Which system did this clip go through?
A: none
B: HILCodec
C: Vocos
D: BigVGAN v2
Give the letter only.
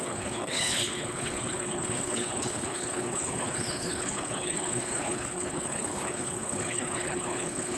B